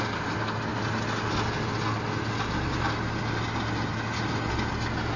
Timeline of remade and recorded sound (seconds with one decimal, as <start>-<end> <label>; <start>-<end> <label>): 0.0-5.2 recorded